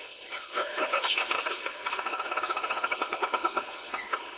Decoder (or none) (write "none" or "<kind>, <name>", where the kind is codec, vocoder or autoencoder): codec, HILCodec